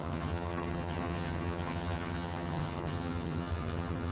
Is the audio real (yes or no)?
no